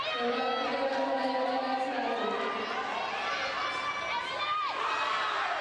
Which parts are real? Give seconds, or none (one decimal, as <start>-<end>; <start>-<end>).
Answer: 0.0-5.6